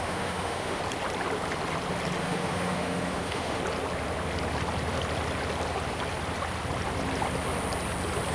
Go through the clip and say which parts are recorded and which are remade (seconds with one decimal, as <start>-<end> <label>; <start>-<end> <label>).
0.0-0.8 remade; 0.8-2.2 recorded; 2.2-3.6 remade; 3.6-8.3 recorded